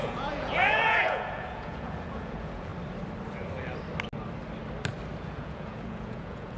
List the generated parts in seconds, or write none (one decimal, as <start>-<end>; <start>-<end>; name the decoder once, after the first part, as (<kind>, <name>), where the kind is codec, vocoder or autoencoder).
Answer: 0.0-2.7 (vocoder, Vocos); 5.2-6.6